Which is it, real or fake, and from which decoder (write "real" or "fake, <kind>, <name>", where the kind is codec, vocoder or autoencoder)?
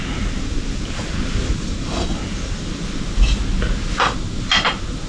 real